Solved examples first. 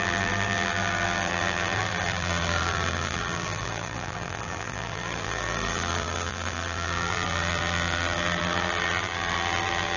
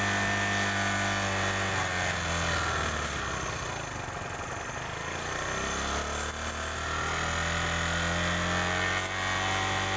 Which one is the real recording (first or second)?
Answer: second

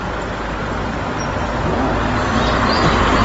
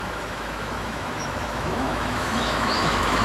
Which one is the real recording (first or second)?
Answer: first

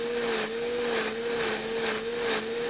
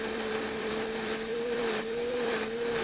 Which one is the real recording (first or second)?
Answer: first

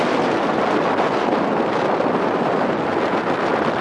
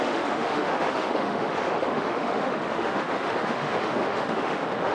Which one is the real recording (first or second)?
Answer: first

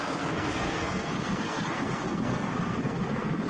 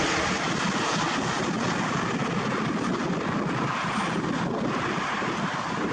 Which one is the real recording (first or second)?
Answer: second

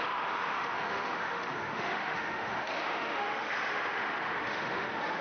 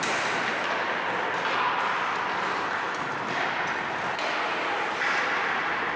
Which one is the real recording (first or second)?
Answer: second